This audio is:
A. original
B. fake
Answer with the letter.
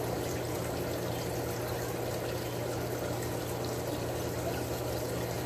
A